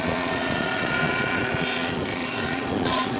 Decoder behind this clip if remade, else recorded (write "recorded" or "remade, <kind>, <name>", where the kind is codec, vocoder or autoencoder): remade, vocoder, Vocos